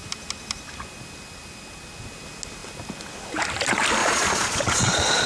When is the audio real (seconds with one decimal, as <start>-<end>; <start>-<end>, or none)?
0.0-4.0